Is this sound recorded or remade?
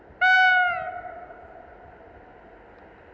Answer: recorded